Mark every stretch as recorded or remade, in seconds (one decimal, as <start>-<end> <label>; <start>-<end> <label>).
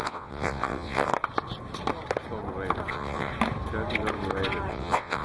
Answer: 0.0-1.1 remade; 1.1-2.9 recorded; 2.9-3.3 remade; 3.3-4.7 recorded; 4.7-5.2 remade